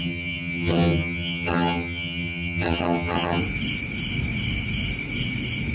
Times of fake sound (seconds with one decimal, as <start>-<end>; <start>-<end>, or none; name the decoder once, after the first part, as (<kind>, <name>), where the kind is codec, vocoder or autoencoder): 0.0-3.4 (vocoder, HiFi-GAN)